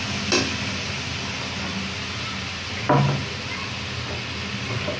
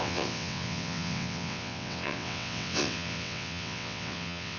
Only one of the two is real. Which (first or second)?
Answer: first